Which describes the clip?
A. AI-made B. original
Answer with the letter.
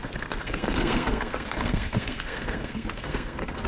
A